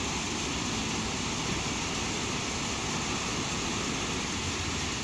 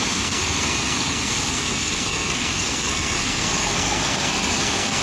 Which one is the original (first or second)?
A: first